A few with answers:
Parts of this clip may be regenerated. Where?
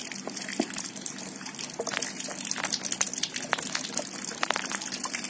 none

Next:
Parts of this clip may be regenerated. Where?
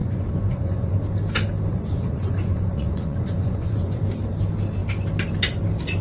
0.0-0.9 (vocoder, Vocos); 1.7-4.0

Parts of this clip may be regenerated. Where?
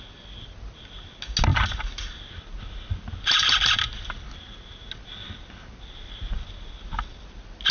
none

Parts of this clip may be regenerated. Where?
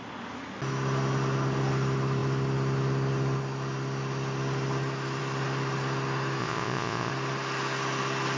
6.4-7.1 (vocoder, Vocos)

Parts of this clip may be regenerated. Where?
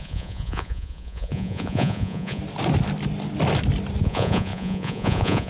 0.0-2.4 (vocoder, Vocos); 4.0-5.5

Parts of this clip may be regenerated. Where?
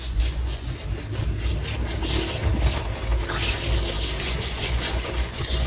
0.0-0.8 (vocoder, Vocos); 4.2-5.7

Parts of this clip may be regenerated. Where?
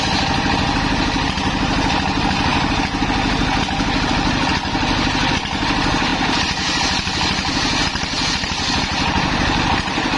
none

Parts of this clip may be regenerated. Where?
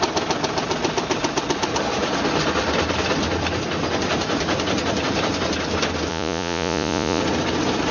6.1-7.2 (vocoder, Vocos)